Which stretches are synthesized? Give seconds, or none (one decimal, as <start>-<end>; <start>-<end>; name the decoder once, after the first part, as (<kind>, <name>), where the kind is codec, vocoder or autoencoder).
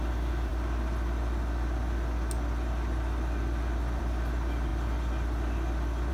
none